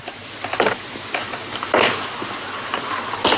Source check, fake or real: real